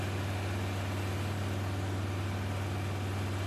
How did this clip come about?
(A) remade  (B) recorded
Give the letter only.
B